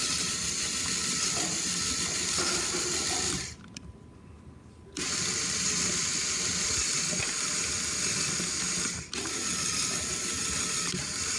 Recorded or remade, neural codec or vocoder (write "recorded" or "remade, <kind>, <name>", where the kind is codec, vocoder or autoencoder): recorded